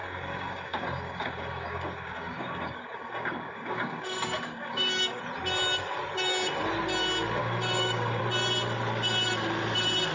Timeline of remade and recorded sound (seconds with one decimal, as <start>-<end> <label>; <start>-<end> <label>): 0.0-5.2 remade; 5.2-7.4 recorded; 7.4-8.2 remade; 8.2-10.1 recorded